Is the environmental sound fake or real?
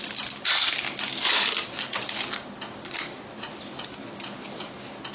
real